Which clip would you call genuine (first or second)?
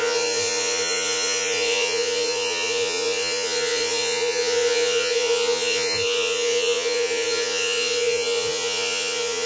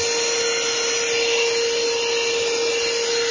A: second